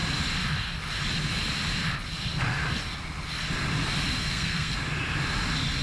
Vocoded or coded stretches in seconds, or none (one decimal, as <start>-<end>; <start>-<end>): 4.2-4.7